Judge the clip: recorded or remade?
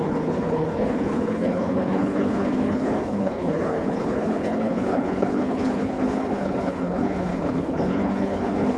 remade